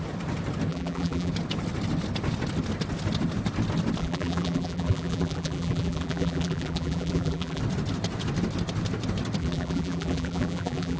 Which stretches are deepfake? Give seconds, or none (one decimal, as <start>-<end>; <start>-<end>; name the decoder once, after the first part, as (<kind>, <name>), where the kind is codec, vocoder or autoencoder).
0.7-1.3 (vocoder, BigVGAN v2); 4.0-7.6; 9.4-11.0